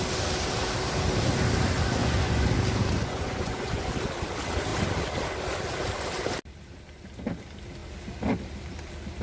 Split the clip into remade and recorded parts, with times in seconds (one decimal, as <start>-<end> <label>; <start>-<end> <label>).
0.0-2.0 recorded; 2.0-2.5 remade; 2.5-3.0 recorded; 3.0-3.9 remade; 3.9-9.2 recorded